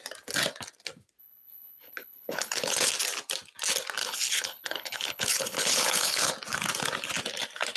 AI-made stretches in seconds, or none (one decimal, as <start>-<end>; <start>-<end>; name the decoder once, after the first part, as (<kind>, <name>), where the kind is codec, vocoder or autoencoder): 1.2-2.9 (codec, HILCodec); 4.0-6.3